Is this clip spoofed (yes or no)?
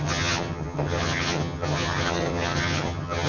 yes